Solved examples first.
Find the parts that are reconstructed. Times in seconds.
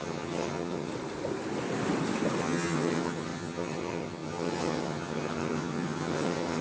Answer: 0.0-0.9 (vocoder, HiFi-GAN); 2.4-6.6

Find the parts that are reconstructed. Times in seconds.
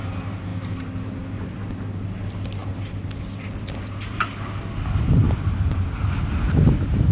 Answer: none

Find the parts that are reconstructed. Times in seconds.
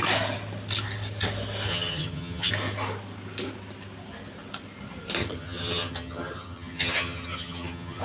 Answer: 1.7-2.5 (vocoder, HiFi-GAN); 5.2-8.0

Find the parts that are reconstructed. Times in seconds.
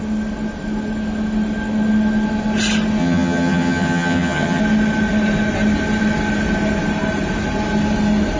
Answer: 3.0-4.6 (vocoder, HiFi-GAN)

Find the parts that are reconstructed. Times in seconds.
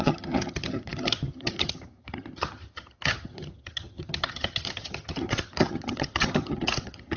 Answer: 0.0-7.2 (vocoder, HiFi-GAN)